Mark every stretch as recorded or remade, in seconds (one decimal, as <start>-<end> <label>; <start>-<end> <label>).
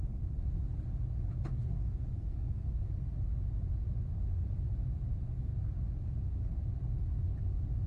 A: 0.0-1.7 recorded; 1.7-2.9 remade; 2.9-7.9 recorded